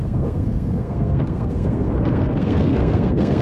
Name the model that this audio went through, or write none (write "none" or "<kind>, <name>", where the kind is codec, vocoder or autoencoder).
codec, SNAC